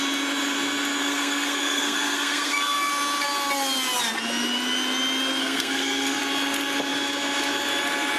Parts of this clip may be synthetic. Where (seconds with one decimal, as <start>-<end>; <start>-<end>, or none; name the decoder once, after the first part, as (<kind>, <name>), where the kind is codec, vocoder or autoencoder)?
1.0-2.9 (codec, SNAC); 5.4-6.2